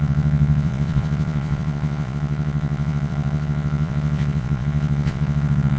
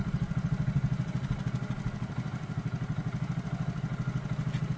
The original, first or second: second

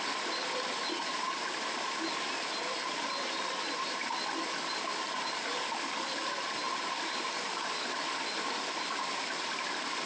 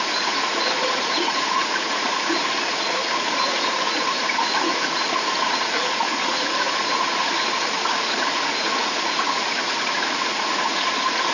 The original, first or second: first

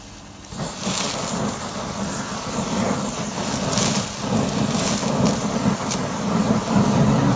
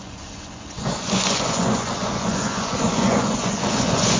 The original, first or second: first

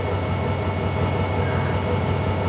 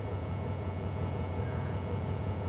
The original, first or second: first